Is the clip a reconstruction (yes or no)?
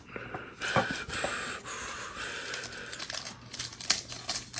no